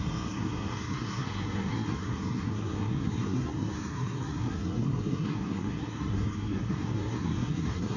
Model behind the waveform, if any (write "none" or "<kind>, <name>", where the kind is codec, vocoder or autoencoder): codec, SNAC